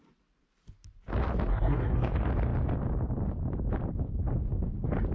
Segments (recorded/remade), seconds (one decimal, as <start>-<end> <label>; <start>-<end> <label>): 0.0-1.5 recorded; 1.5-2.1 remade; 2.1-5.1 recorded